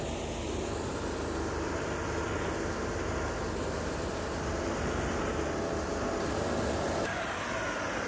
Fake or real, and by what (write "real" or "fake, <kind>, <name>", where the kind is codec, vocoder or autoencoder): real